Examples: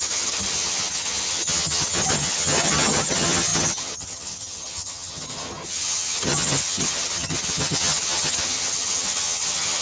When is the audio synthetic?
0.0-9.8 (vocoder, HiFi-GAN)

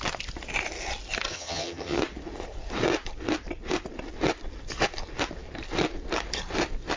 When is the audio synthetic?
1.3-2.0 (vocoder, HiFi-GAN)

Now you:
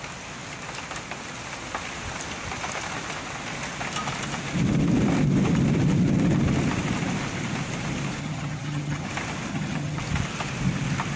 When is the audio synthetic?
8.2-9.1 (vocoder, HiFi-GAN); 9.5-10.0

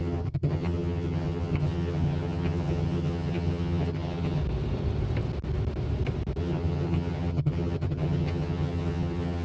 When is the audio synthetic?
0.0-4.4 (vocoder, HiFi-GAN); 6.4-9.4

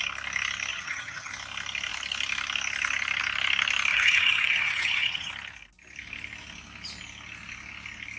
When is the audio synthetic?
0.7-1.3 (vocoder, HiFi-GAN); 3.9-5.3

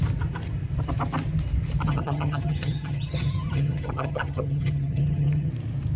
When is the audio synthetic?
1.9-5.5 (vocoder, HiFi-GAN)

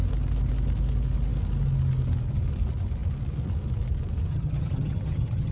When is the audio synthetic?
4.3-5.5 (vocoder, HiFi-GAN)

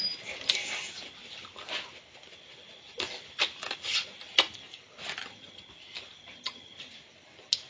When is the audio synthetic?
5.2-5.7 (vocoder, HiFi-GAN); 6.2-6.8